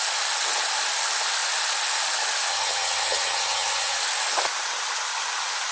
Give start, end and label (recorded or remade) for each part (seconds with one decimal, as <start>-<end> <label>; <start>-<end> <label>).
0.0-2.5 recorded; 2.5-4.0 remade; 4.0-5.7 recorded